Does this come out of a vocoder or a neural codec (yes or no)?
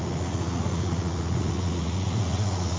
yes